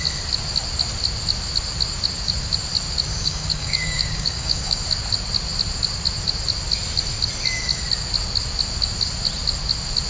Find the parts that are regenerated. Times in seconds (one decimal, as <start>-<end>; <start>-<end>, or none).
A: 3.1-4.8